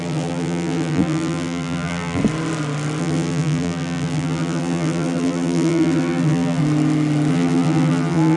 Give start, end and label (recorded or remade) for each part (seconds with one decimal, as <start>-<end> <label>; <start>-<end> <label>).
0.0-2.2 remade; 2.2-3.0 recorded; 3.0-6.6 remade; 6.6-7.3 recorded; 7.3-8.4 remade